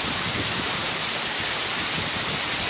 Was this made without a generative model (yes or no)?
yes